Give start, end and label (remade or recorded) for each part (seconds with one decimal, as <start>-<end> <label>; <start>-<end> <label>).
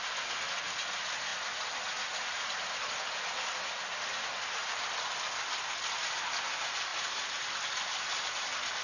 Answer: 0.0-8.8 recorded